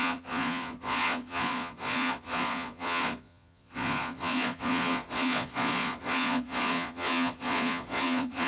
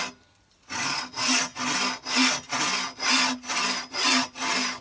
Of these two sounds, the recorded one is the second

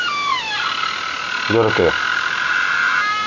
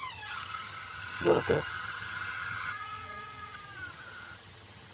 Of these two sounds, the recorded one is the first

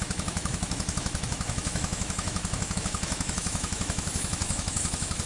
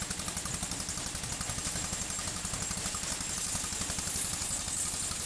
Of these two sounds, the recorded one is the second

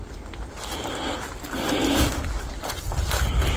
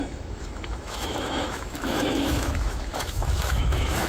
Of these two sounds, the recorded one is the first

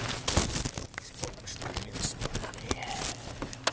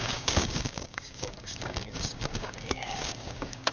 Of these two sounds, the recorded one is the first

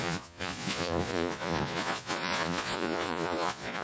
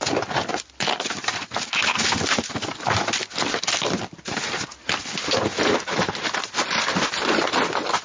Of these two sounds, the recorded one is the second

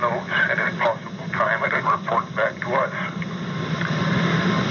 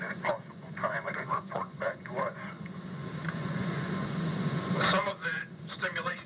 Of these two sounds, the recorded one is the first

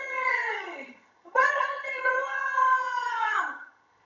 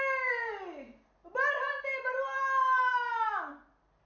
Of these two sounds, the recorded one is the second